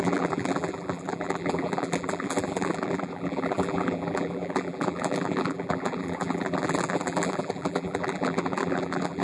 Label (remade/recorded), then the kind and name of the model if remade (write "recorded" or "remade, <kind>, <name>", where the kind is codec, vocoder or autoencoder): remade, vocoder, BigVGAN v2